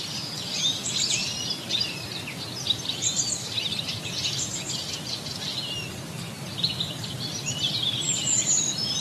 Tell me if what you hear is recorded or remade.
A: remade